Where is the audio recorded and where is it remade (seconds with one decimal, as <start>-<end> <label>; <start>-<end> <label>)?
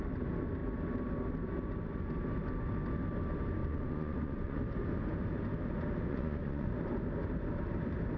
0.0-3.6 recorded; 3.6-4.6 remade; 4.6-6.1 recorded; 6.1-6.7 remade; 6.7-8.2 recorded